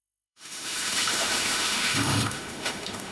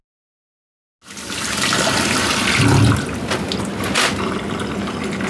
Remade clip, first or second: first